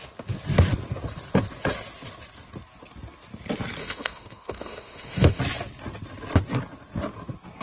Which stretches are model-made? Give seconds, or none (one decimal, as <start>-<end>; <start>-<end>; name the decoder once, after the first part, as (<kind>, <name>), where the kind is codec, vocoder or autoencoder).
3.8-5.4 (autoencoder, DAC-VAE)